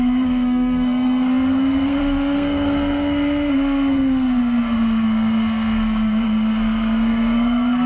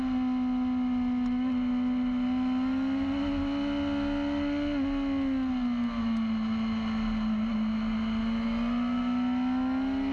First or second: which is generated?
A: first